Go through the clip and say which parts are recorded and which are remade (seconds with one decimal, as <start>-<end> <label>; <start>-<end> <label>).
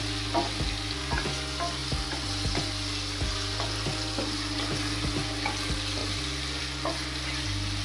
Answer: 0.0-7.8 recorded